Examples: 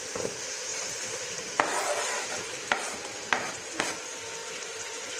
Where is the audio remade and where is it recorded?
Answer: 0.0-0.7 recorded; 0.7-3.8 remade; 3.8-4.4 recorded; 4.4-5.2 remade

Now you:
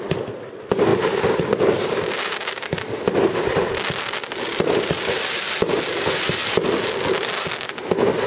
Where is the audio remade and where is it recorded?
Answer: 0.0-8.3 recorded

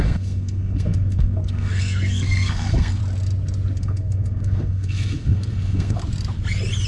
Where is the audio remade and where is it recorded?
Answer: 0.0-3.0 remade; 3.0-3.8 recorded; 3.8-6.0 remade; 6.0-6.9 recorded

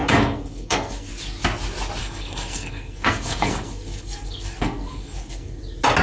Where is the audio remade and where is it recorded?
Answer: 0.0-1.1 remade; 1.1-2.0 recorded; 2.0-5.6 remade; 5.6-6.0 recorded

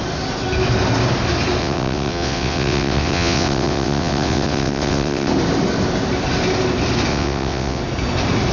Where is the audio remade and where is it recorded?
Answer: 0.0-1.6 recorded; 1.6-5.3 remade; 5.3-7.1 recorded; 7.1-7.8 remade; 7.8-8.5 recorded